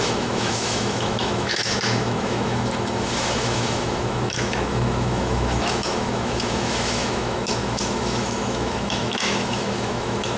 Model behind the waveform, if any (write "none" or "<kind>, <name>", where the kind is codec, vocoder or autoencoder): autoencoder, DAC-VAE